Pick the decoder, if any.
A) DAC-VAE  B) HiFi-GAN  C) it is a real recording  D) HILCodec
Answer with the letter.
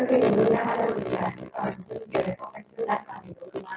C